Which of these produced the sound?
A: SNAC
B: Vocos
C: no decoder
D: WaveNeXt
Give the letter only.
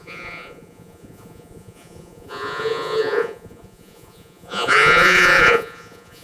B